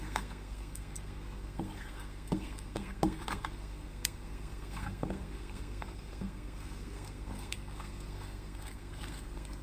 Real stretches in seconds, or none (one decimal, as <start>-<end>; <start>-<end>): none